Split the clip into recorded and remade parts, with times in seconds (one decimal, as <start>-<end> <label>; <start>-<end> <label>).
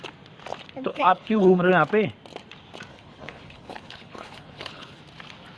0.0-0.9 recorded; 0.9-1.7 remade; 1.7-2.9 recorded; 2.9-5.0 remade; 5.0-5.6 recorded